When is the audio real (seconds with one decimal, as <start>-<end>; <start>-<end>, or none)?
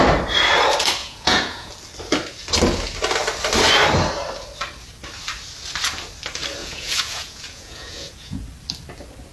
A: 0.0-1.0; 1.7-6.6; 8.4-9.3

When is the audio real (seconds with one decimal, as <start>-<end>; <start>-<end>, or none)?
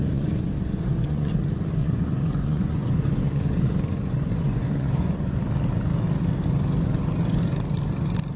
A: 1.3-1.8; 5.4-8.4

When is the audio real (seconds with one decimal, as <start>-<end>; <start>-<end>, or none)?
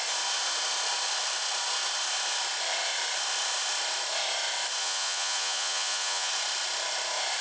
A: 0.0-4.8; 6.3-7.4